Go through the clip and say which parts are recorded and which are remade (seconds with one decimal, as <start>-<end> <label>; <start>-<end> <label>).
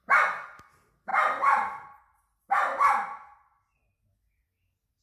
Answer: 0.0-5.0 recorded